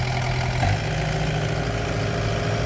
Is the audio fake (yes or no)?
no